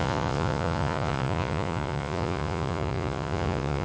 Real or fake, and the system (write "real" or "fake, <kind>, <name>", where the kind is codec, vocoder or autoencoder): fake, vocoder, Vocos